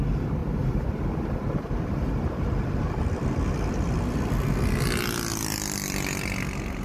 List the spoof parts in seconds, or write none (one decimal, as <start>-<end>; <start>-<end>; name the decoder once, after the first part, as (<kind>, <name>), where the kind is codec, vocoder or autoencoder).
none